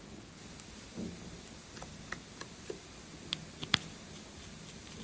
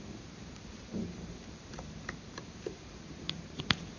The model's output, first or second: second